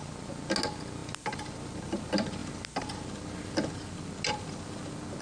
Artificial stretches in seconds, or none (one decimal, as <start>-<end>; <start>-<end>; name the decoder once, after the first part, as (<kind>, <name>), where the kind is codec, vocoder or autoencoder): none

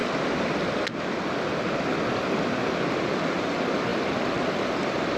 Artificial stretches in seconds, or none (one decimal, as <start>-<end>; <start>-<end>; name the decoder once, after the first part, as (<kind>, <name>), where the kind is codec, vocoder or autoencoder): 3.1-5.2 (vocoder, BigVGAN v2)

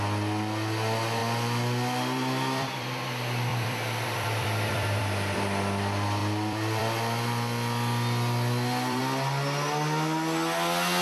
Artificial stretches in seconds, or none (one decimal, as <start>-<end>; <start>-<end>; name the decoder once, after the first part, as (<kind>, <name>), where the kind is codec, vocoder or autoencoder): 1.2-3.1 (vocoder, BigVGAN v2); 3.5-5.0; 6.2-9.0

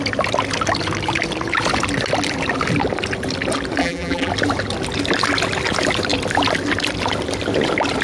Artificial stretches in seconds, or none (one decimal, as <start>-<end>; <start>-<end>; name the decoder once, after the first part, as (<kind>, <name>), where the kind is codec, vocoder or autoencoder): 3.8-4.3 (vocoder, BigVGAN v2)

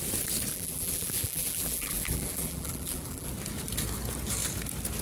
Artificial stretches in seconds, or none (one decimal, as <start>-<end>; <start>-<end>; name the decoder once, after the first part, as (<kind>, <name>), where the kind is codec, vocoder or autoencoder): 0.5-3.3 (vocoder, BigVGAN v2)

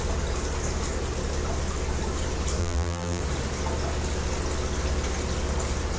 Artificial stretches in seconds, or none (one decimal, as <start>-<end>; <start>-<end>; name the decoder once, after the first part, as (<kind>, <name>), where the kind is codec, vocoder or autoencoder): 2.6-3.2 (vocoder, BigVGAN v2)